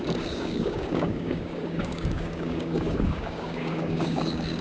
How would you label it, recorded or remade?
remade